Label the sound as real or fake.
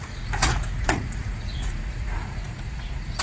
fake